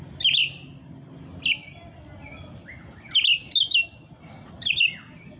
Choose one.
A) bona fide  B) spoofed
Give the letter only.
A